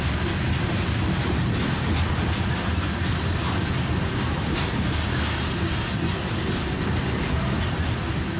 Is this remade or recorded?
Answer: recorded